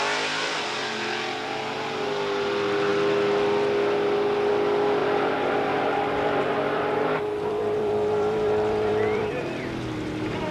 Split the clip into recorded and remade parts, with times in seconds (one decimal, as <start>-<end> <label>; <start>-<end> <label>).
0.0-5.0 recorded; 5.0-9.6 remade; 9.6-10.5 recorded